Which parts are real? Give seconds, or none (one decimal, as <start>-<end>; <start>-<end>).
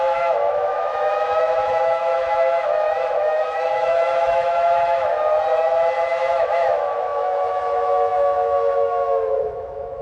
5.1-6.1